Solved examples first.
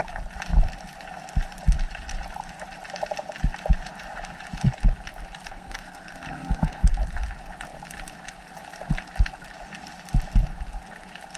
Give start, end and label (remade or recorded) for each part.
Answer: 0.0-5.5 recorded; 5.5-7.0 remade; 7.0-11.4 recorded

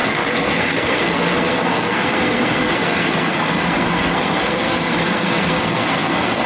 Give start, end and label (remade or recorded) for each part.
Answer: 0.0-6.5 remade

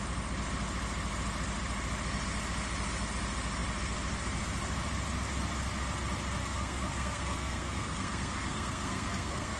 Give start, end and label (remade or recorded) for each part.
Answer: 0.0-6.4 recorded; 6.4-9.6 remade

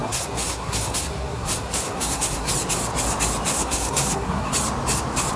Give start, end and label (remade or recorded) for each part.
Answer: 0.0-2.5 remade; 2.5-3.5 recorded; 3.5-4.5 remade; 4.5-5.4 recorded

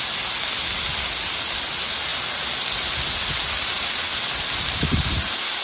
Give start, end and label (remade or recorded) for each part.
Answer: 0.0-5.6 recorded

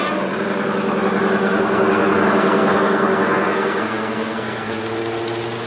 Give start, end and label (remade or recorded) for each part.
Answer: 0.0-1.4 recorded; 1.4-4.8 remade; 4.8-5.7 recorded

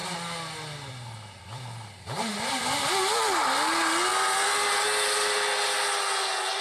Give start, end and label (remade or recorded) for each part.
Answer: 0.0-6.6 recorded